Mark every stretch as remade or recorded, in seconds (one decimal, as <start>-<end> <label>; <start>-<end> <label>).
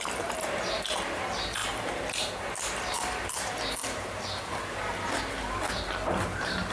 0.0-6.7 remade